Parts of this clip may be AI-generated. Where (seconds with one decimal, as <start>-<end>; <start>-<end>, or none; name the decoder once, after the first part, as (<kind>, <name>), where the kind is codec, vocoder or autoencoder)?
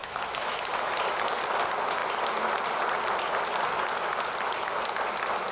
0.0-0.6 (autoencoder, DAC-VAE)